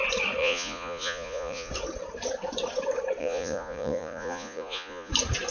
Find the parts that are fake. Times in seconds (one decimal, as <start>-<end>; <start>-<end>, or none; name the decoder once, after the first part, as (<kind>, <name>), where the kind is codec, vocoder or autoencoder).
0.4-1.7 (vocoder, Vocos); 3.2-5.1